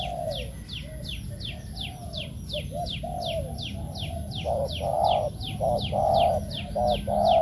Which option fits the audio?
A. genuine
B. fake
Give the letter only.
A